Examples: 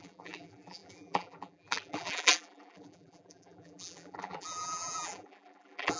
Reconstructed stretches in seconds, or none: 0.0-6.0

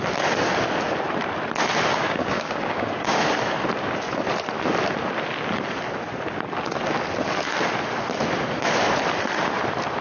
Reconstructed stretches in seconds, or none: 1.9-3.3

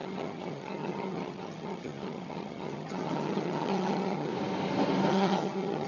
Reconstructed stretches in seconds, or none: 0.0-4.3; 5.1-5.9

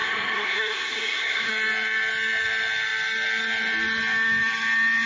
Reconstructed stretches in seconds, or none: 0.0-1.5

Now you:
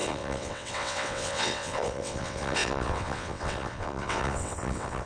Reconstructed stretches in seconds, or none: 0.0-5.1